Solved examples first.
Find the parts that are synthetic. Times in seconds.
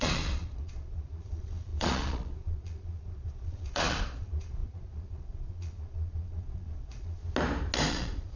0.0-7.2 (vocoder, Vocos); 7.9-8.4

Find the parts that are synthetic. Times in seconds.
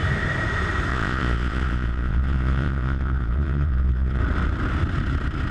0.9-4.2 (vocoder, Vocos)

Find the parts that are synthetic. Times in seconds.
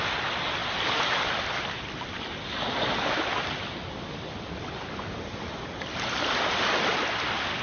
none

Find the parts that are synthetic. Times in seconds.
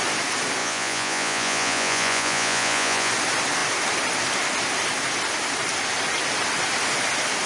0.6-3.1 (vocoder, Vocos)